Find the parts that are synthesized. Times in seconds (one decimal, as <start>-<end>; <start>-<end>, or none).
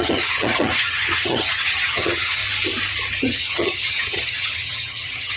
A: 0.0-2.4; 3.2-5.4